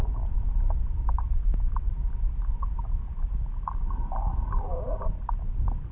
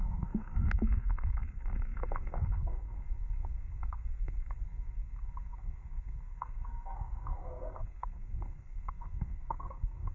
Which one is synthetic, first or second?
second